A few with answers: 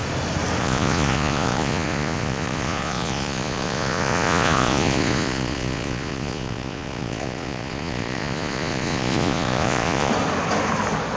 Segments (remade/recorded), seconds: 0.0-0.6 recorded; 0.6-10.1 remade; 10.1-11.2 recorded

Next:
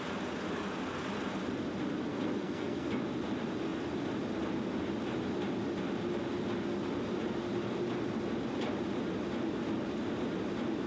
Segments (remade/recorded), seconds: 0.0-2.1 recorded; 2.1-2.9 remade; 2.9-10.9 recorded

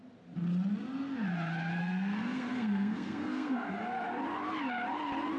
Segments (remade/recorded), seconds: 0.0-1.8 recorded; 1.8-3.7 remade; 3.7-5.4 recorded

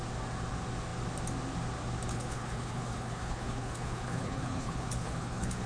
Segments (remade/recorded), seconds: 0.0-2.1 recorded; 2.1-5.7 remade